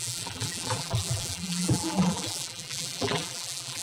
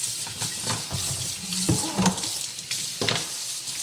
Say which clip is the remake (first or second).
first